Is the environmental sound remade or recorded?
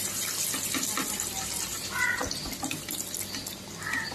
remade